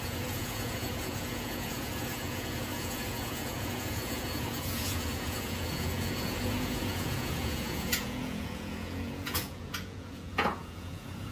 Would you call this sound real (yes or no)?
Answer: no